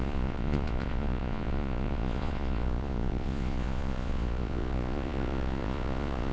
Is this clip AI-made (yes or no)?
yes